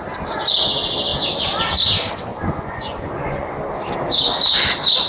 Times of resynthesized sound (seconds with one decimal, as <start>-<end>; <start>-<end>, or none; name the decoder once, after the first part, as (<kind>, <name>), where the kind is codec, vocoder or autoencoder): 2.3-3.5 (vocoder, Vocos)